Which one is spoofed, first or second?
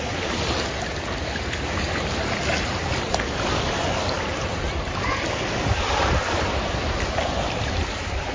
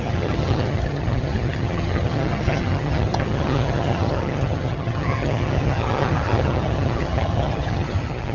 second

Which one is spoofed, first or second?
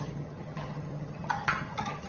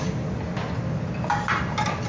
first